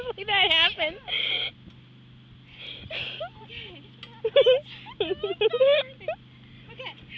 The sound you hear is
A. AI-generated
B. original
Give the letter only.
B